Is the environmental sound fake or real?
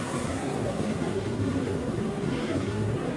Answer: fake